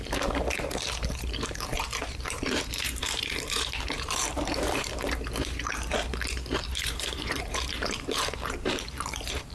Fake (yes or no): yes